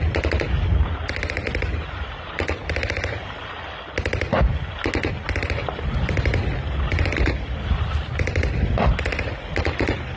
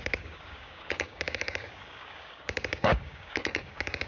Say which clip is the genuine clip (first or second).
first